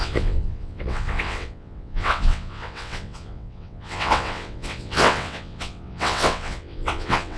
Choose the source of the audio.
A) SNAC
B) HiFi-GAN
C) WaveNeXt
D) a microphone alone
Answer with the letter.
C